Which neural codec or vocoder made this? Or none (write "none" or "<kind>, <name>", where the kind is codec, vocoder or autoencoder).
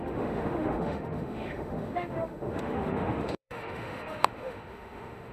autoencoder, DAC-VAE